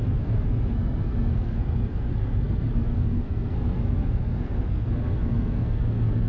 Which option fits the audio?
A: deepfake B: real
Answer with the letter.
A